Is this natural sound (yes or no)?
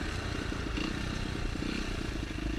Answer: yes